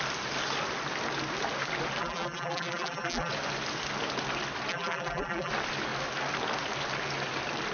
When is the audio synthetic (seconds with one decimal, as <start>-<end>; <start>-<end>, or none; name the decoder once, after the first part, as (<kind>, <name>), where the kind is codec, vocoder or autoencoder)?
2.0-3.3 (vocoder, BigVGAN v2); 4.7-5.5